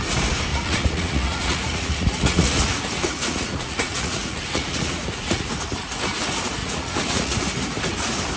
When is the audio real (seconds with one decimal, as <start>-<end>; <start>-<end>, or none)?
0.0-0.5; 5.5-6.6; 7.4-8.4